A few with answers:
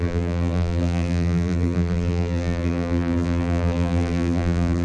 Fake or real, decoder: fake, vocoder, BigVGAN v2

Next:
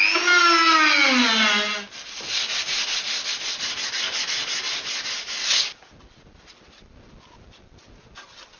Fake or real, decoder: real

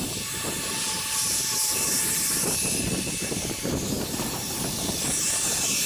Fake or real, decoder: fake, vocoder, BigVGAN v2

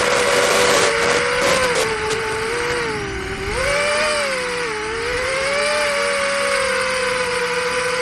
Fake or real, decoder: real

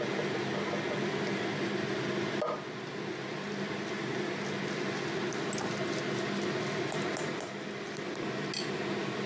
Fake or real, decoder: real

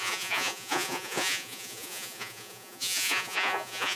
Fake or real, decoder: fake, vocoder, Vocos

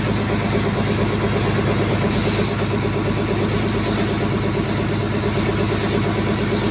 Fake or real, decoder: real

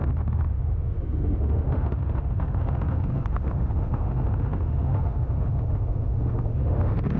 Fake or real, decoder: fake, autoencoder, DAC-VAE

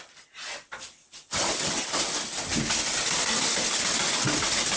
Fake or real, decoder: real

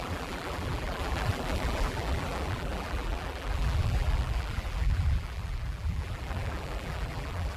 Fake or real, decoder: fake, vocoder, BigVGAN v2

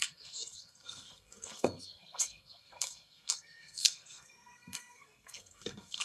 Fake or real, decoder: fake, codec, SNAC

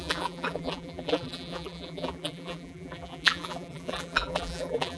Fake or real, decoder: fake, vocoder, BigVGAN v2